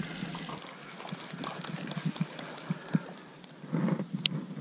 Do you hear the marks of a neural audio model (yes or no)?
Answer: no